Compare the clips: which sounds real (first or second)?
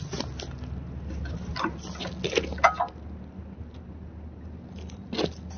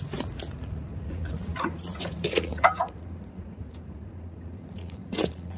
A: first